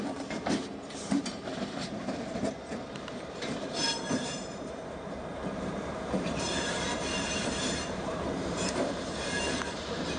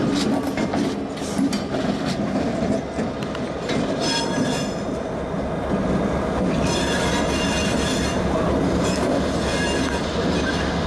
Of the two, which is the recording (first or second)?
second